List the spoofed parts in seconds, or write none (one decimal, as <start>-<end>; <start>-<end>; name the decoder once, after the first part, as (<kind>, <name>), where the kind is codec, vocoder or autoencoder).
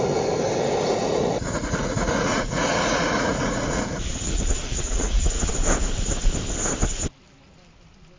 1.0-5.5 (vocoder, Vocos)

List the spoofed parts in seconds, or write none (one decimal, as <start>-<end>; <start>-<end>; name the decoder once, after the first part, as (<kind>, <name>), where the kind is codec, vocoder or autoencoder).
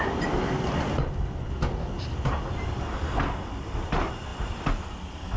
none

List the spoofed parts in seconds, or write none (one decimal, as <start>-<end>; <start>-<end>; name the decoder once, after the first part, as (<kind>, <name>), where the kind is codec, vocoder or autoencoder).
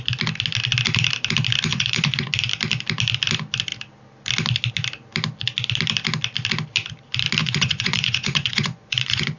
1.7-2.3 (vocoder, Vocos); 7.4-9.4